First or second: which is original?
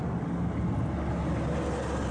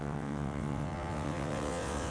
first